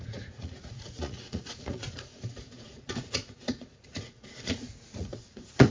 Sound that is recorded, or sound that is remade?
remade